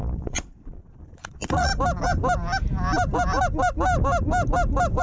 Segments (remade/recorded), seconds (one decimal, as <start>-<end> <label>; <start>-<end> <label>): 0.0-1.7 remade; 1.7-5.0 recorded